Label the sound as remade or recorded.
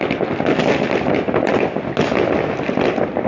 recorded